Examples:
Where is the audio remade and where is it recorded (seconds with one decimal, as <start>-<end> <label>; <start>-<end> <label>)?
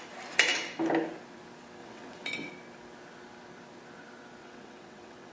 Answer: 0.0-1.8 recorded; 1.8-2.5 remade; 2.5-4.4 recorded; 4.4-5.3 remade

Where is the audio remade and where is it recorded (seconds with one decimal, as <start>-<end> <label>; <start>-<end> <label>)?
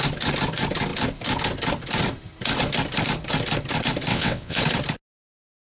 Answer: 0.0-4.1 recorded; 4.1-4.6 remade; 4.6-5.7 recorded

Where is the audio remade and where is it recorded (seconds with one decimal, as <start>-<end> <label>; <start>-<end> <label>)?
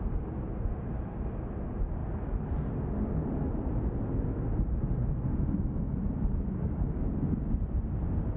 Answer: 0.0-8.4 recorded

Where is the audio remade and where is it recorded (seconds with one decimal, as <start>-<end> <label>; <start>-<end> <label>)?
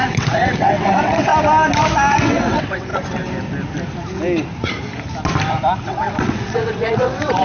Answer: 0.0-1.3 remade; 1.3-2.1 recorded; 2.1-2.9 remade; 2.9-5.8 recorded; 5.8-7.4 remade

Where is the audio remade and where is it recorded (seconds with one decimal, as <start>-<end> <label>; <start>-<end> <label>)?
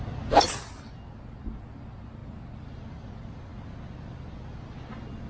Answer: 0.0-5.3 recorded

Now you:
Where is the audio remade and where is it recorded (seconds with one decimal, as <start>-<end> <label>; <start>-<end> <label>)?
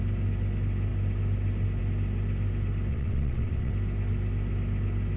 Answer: 0.0-2.9 recorded; 2.9-3.7 remade; 3.7-5.2 recorded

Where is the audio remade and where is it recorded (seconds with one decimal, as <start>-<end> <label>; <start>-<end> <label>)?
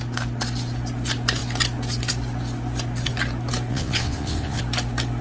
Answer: 0.0-3.7 recorded; 3.7-4.6 remade; 4.6-5.2 recorded